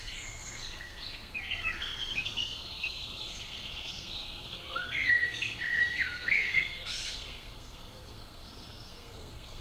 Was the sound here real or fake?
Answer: fake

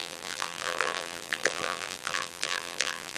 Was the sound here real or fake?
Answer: fake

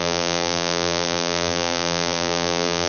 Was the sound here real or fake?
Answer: fake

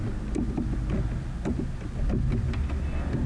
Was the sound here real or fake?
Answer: real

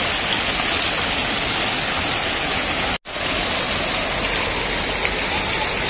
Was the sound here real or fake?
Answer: real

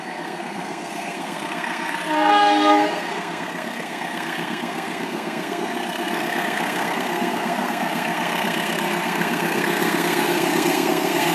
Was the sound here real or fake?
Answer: fake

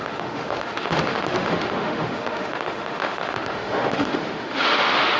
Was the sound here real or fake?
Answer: fake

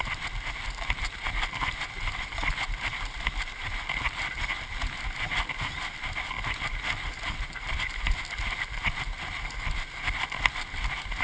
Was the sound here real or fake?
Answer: real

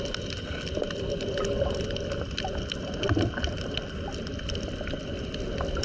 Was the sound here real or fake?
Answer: real